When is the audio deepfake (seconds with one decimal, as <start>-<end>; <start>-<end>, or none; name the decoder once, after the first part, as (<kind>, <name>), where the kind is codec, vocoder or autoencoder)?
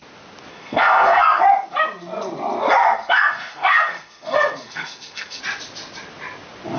0.5-1.4 (codec, SNAC); 2.8-5.4